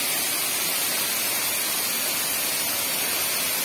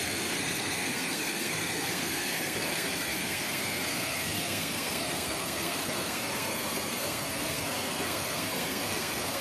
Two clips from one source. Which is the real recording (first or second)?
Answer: first